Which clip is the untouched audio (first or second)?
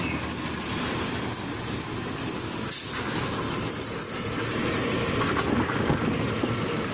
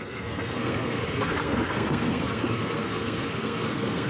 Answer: first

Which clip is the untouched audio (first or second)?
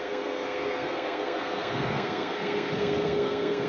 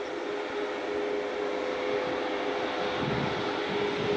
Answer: second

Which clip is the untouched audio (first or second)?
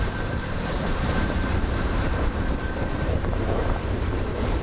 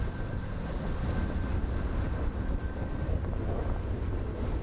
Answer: second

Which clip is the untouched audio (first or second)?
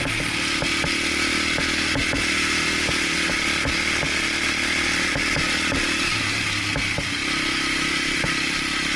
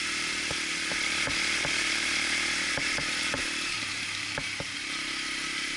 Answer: first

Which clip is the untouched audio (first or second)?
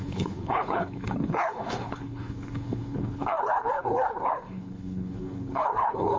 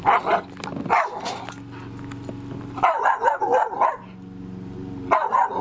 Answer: second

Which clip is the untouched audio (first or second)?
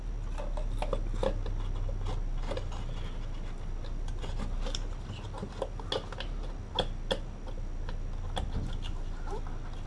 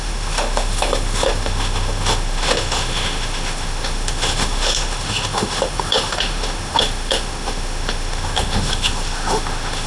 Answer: first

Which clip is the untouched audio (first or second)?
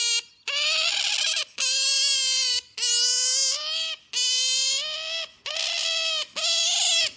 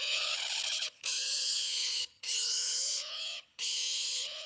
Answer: first